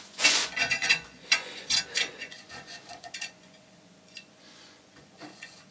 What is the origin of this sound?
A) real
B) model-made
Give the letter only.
B